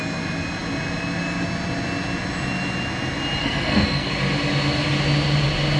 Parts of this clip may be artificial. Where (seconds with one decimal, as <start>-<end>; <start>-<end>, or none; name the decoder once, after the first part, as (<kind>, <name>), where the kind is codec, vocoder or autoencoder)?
3.4-4.1 (codec, SNAC)